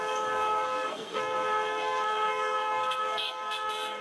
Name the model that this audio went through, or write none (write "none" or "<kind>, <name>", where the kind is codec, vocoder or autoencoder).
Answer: codec, SNAC